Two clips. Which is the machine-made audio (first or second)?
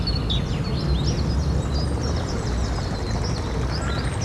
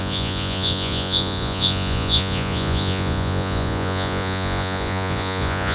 second